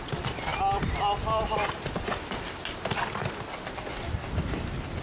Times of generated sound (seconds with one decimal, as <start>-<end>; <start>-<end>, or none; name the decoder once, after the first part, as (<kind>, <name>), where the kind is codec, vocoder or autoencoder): none